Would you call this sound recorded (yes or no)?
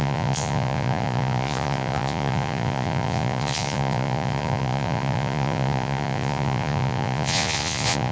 no